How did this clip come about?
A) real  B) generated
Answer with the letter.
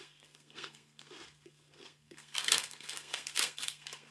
B